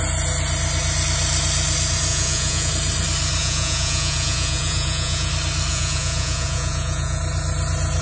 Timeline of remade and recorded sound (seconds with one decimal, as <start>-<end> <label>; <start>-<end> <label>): 0.0-2.1 recorded; 2.1-2.7 remade; 2.7-3.4 recorded; 3.4-5.3 remade; 5.3-5.7 recorded; 5.7-7.2 remade; 7.2-8.0 recorded